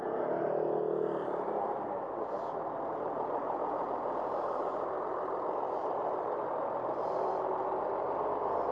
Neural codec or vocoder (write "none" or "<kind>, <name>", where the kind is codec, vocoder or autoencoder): none